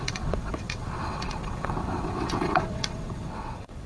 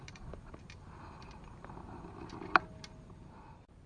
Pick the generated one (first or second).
first